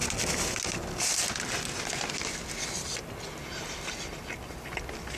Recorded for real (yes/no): yes